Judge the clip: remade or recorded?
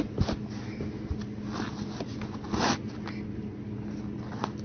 recorded